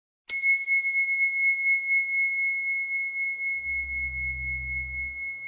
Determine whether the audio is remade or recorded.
recorded